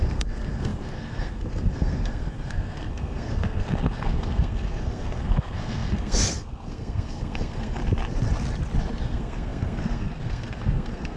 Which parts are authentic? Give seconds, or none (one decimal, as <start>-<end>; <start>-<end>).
7.8-9.0